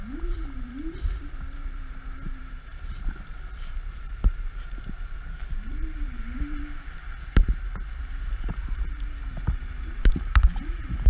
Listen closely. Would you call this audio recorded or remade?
remade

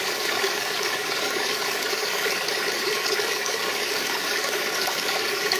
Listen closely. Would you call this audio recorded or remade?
remade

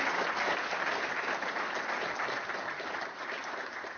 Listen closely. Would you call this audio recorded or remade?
recorded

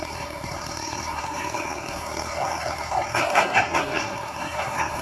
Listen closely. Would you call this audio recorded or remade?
remade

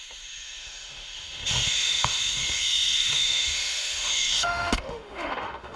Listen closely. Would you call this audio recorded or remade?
remade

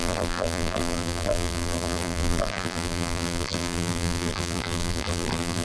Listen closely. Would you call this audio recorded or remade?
remade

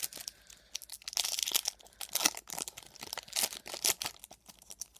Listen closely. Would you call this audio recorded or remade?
recorded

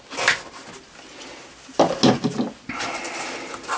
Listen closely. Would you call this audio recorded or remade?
recorded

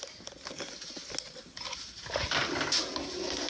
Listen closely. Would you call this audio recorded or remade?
recorded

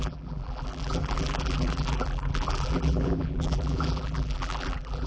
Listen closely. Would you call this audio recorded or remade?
remade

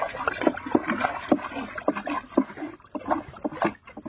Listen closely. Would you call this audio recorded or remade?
recorded